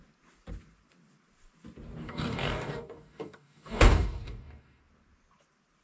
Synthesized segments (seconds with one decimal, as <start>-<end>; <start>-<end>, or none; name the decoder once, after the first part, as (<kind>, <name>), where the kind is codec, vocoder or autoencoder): 2.0-4.8 (codec, DAC)